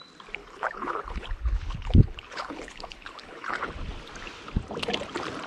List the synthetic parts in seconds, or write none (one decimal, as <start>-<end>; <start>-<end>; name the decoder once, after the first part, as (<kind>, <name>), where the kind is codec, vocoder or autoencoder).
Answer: 0.4-3.7 (codec, HILCodec)